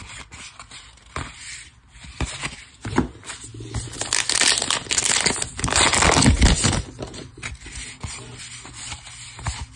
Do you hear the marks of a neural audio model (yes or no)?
no